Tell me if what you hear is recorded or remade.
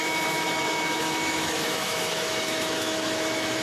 remade